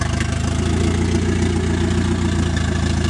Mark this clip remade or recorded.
recorded